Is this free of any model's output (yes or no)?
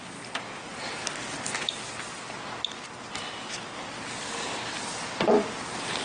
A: yes